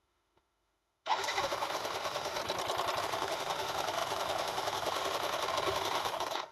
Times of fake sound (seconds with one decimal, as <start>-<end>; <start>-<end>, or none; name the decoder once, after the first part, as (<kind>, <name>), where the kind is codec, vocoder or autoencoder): 0.0-2.4 (autoencoder, DAC-VAE); 3.0-6.5